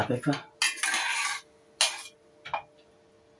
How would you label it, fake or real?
real